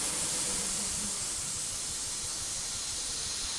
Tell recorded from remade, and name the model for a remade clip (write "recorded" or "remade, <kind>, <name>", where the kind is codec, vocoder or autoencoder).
recorded